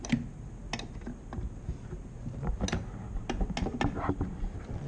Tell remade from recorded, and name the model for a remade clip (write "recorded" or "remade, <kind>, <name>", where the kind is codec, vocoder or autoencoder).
recorded